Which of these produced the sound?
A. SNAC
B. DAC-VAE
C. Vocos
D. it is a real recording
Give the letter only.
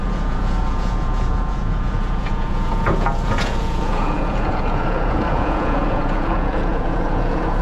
C